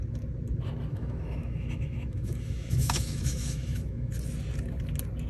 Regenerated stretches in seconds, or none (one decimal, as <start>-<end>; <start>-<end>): 0.9-4.1